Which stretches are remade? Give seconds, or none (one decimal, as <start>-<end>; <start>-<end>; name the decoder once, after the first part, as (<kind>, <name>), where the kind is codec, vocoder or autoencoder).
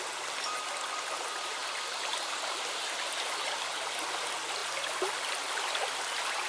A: none